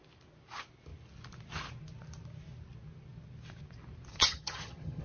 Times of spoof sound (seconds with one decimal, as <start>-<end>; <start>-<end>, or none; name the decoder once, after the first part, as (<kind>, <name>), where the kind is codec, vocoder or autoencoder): 4.1-5.0 (vocoder, HiFi-GAN)